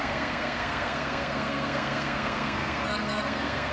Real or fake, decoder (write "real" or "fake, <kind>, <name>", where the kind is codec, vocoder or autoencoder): fake, codec, SNAC